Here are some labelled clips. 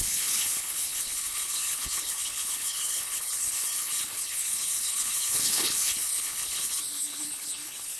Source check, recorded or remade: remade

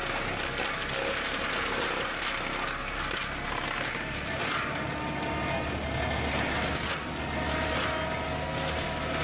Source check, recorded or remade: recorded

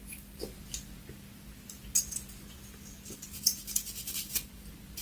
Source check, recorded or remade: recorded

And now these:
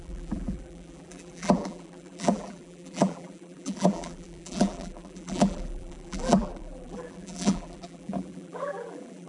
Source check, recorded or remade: remade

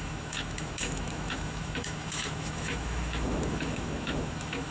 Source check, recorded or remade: remade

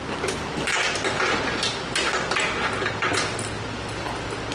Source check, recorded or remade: recorded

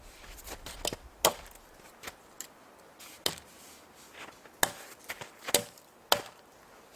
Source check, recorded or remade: recorded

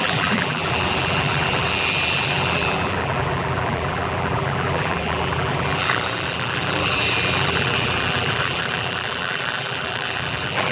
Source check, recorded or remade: remade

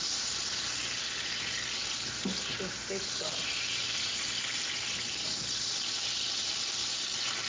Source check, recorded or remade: recorded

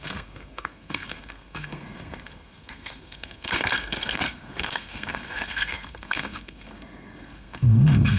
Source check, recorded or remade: remade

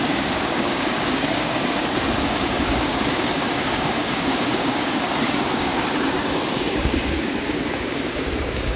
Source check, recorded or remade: remade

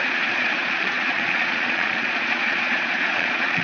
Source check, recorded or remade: remade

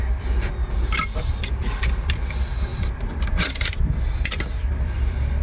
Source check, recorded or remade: remade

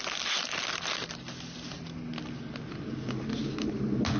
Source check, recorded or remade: recorded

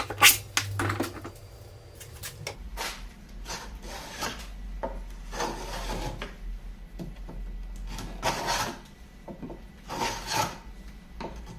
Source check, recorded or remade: recorded